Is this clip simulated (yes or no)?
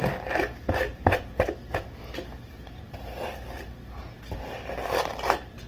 no